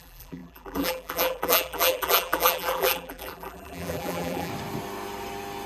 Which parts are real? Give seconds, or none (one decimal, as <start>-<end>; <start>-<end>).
4.5-5.7